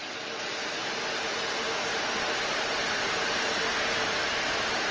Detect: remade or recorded recorded